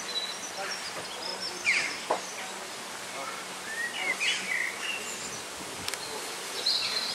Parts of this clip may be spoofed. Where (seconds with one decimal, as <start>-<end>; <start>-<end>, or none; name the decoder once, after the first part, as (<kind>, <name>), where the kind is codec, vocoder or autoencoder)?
none